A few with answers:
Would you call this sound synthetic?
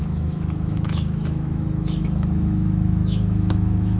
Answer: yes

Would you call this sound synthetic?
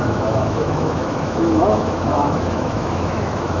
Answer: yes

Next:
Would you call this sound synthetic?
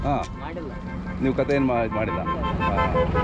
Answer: no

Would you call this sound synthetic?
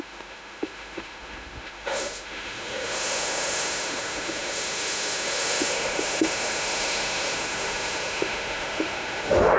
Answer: yes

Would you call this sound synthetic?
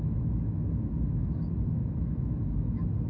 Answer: yes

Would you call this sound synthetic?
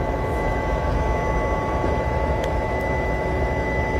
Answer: yes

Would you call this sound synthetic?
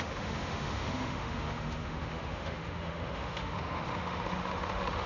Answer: yes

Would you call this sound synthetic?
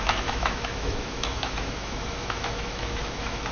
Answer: yes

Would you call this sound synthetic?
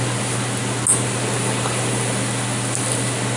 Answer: no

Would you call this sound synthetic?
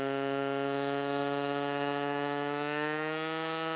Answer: yes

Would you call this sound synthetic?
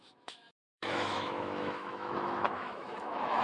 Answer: yes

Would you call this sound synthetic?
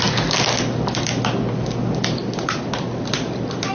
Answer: no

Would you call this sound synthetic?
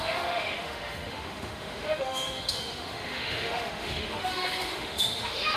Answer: yes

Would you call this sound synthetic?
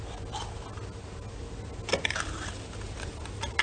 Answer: no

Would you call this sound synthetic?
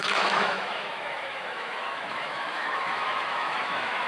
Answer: yes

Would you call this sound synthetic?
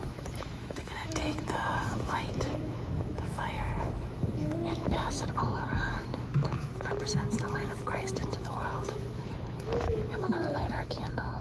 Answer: yes